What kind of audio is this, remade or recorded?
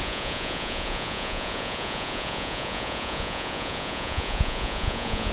remade